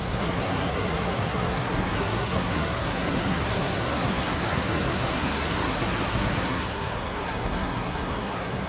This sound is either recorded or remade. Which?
remade